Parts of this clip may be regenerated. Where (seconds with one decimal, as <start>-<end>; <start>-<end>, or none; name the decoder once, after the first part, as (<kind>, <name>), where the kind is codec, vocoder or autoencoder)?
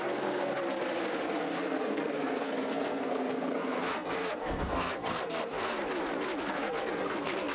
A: 0.0-0.5 (codec, SNAC); 1.4-5.8; 6.4-7.5